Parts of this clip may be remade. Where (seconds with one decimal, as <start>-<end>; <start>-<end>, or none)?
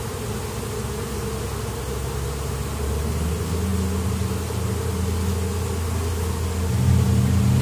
none